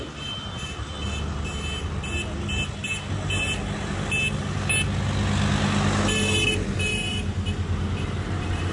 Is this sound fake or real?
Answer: real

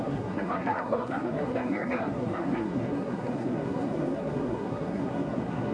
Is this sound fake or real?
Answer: fake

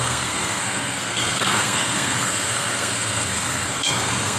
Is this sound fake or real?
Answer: fake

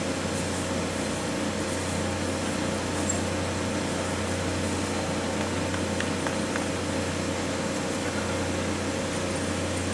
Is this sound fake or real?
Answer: real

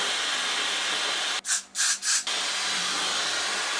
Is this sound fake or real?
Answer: real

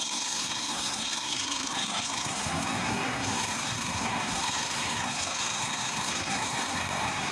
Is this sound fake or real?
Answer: fake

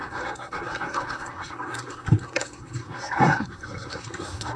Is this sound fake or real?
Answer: fake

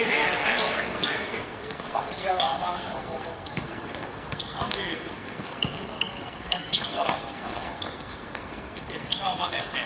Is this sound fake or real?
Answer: fake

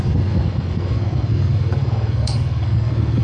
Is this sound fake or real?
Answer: fake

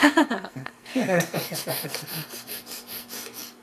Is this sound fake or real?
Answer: fake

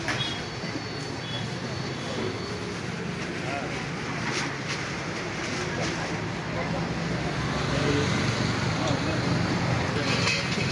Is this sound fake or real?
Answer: real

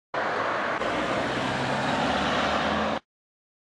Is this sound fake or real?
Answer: real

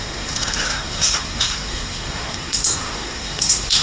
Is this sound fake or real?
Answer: fake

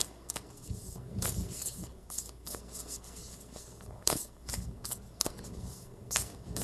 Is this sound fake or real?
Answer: fake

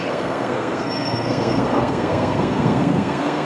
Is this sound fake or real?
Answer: fake